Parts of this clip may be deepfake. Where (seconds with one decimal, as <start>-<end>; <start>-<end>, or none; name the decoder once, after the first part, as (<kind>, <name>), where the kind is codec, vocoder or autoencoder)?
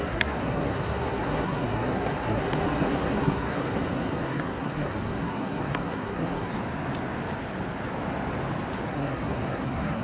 0.0-6.5 (codec, SNAC); 8.9-10.0